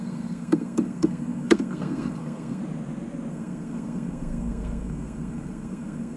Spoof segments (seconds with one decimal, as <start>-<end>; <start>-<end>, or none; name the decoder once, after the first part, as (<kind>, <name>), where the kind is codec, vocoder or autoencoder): 0.0-2.6 (codec, SNAC); 3.3-6.2